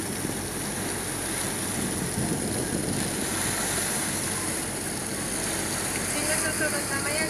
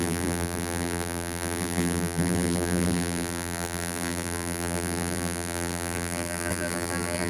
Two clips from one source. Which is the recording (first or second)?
first